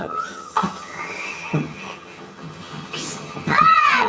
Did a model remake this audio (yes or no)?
yes